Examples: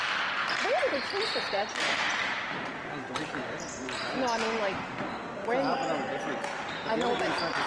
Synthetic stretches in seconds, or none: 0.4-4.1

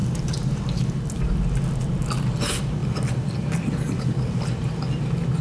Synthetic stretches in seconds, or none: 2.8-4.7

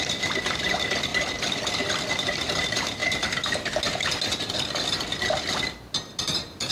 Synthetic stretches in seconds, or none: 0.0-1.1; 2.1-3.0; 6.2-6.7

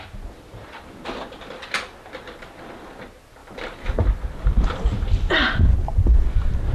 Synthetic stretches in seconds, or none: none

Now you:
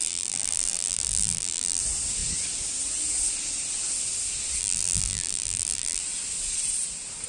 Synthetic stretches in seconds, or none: 0.0-1.8; 4.6-6.0